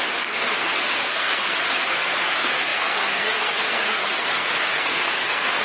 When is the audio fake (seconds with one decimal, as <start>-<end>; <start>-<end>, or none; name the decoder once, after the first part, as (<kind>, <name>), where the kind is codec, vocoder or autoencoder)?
0.0-5.6 (codec, SNAC)